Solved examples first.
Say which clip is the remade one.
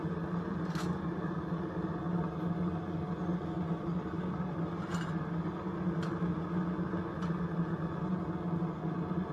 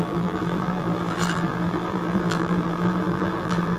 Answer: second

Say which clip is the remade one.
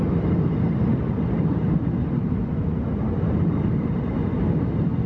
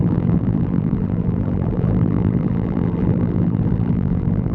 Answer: second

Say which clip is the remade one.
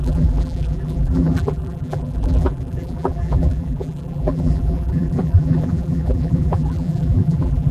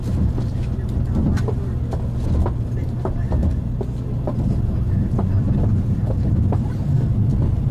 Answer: first